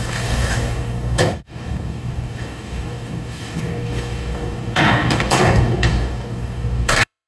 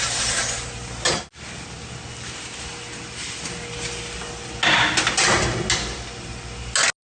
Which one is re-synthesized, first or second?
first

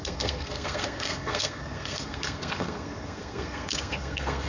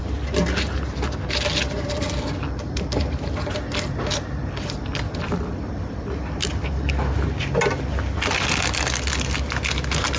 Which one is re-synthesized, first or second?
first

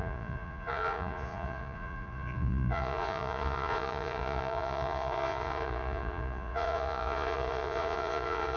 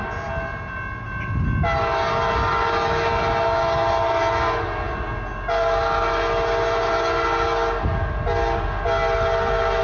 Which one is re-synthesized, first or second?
first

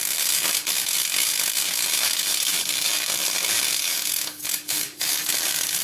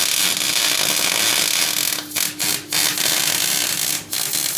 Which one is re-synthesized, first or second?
first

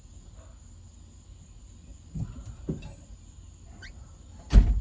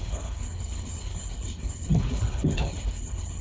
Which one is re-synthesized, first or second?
second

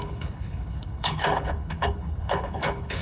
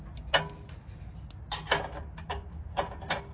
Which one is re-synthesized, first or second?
first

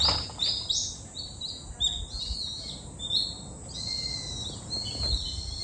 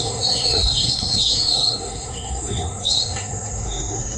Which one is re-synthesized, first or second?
second